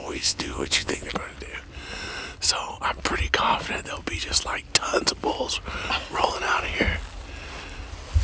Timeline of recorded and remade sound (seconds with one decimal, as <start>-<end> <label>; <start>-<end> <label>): 0.0-1.1 remade; 1.1-8.2 recorded